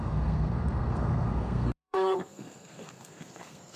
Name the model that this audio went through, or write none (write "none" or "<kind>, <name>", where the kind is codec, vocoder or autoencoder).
codec, SNAC